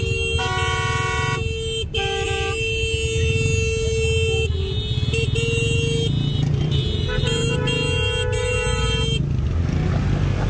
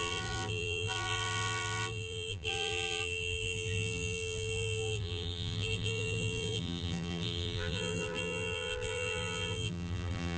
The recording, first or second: first